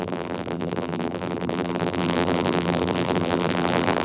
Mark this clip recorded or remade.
remade